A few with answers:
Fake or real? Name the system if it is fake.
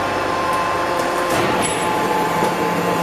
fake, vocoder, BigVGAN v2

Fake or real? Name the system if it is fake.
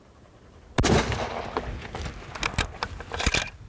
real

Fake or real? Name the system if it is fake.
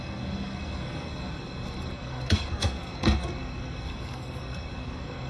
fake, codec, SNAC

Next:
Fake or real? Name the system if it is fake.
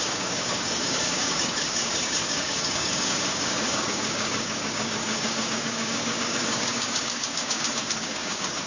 fake, codec, DAC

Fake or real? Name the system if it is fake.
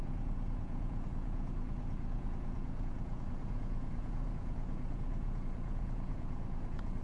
fake, vocoder, Vocos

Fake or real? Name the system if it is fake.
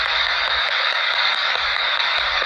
fake, codec, DAC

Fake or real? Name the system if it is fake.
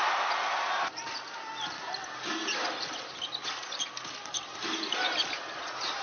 real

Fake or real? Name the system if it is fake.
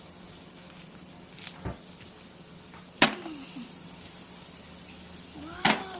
real